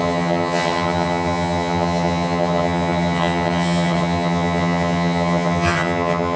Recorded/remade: remade